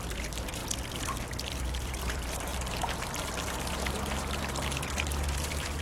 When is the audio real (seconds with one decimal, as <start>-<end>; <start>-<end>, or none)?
0.6-1.6